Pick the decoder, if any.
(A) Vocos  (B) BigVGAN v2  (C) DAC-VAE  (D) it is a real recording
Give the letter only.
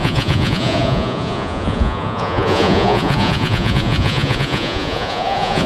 A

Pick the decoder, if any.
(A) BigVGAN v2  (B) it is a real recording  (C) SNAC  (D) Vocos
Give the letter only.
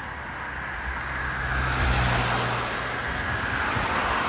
B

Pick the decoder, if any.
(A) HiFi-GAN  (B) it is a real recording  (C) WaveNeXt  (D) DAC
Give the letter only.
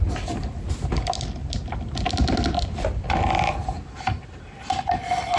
B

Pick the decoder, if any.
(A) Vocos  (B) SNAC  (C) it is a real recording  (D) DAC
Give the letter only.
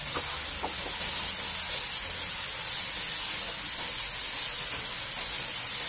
C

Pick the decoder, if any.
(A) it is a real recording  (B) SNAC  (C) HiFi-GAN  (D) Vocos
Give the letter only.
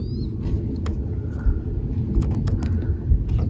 A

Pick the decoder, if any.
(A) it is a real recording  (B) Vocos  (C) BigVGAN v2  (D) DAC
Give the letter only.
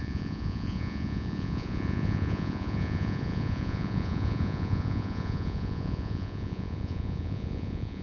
B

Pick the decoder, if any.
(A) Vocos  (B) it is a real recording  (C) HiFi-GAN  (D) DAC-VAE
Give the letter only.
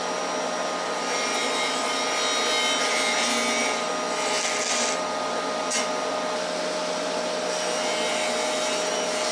B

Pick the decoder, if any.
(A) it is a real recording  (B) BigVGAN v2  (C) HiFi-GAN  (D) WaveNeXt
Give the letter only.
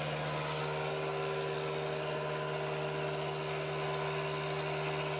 A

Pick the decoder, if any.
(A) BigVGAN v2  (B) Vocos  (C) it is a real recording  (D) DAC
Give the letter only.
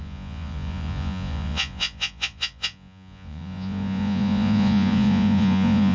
B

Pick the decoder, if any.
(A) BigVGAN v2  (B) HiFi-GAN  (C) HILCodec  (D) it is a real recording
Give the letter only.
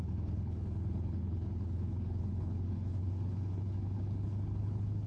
C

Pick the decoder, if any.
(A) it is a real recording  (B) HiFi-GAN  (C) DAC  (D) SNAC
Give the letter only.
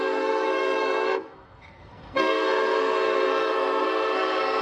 D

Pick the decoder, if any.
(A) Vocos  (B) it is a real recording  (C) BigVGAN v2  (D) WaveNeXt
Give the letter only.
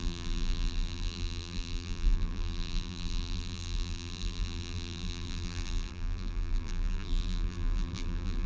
C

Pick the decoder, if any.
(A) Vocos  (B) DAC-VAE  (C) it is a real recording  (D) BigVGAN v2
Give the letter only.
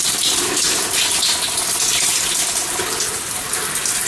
D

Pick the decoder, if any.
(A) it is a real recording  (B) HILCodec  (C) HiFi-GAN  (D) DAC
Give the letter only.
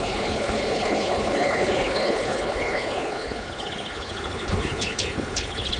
B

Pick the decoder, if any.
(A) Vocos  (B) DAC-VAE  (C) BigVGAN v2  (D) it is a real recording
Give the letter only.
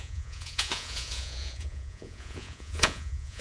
A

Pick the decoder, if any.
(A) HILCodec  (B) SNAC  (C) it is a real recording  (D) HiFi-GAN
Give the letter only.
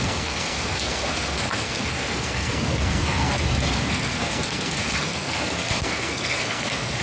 B